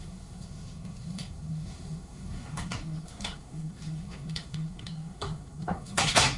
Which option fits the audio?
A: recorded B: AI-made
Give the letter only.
B